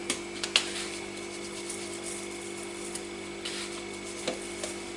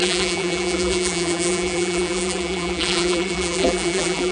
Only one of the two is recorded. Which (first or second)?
first